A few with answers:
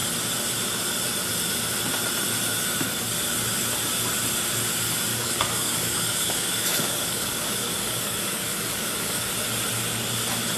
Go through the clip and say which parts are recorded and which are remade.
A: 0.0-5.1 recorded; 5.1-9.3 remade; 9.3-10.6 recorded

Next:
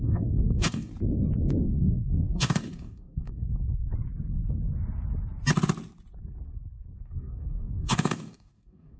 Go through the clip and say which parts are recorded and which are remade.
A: 0.0-0.9 remade; 0.9-1.6 recorded; 1.6-3.4 remade; 3.4-7.0 recorded; 7.0-9.0 remade

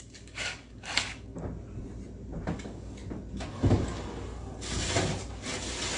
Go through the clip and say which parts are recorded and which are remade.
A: 0.0-1.3 remade; 1.3-2.6 recorded; 2.6-3.0 remade; 3.0-6.0 recorded

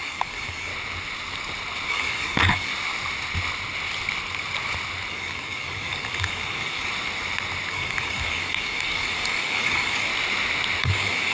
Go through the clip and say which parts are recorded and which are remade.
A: 0.0-0.7 remade; 0.7-1.9 recorded; 1.9-2.7 remade; 2.7-5.1 recorded; 5.1-6.9 remade; 6.9-7.7 recorded; 7.7-10.1 remade; 10.1-10.8 recorded; 10.8-11.3 remade

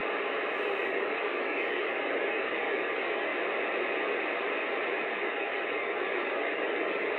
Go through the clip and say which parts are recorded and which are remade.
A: 0.0-0.8 recorded; 0.8-3.3 remade; 3.3-5.1 recorded; 5.1-7.2 remade

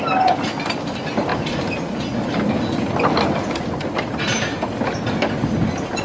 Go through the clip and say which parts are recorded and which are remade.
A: 0.0-6.0 recorded

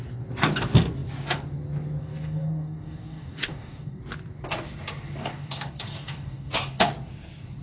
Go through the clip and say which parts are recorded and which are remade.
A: 0.0-2.0 recorded; 2.0-4.0 remade; 4.0-5.2 recorded; 5.2-6.9 remade; 6.9-7.6 recorded